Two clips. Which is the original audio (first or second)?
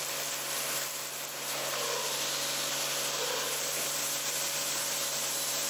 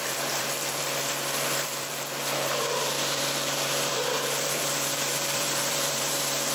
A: first